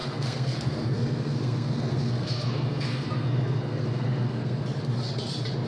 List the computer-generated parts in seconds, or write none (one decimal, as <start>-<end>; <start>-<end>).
0.0-4.6